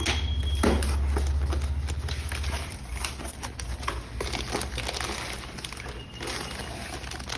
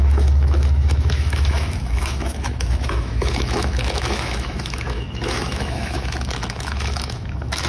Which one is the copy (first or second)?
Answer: second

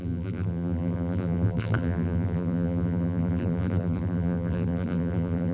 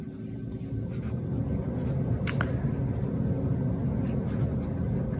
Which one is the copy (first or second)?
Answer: first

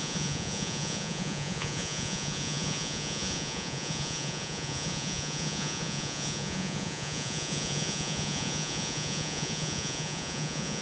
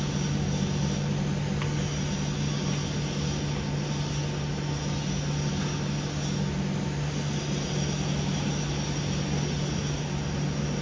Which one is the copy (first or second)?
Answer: first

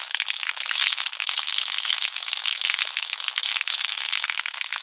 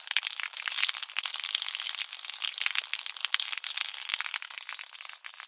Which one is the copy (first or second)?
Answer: first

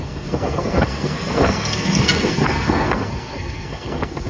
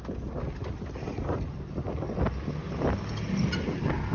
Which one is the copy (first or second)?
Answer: first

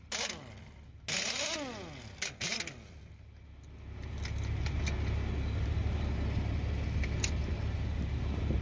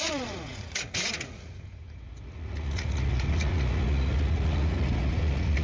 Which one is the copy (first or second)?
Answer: second